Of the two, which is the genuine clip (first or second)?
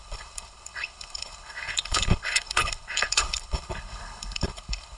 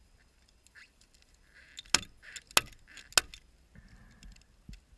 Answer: second